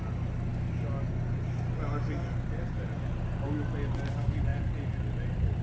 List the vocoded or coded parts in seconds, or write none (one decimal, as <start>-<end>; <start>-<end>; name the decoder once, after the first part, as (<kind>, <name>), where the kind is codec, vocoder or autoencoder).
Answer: none